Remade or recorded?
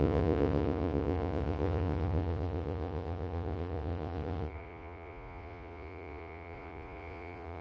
remade